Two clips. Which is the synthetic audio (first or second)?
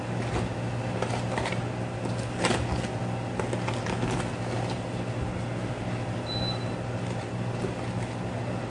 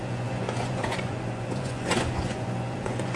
second